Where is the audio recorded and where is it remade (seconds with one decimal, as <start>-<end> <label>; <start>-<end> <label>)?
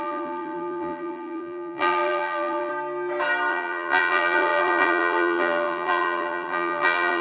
0.0-2.7 remade; 2.7-3.5 recorded; 3.5-7.2 remade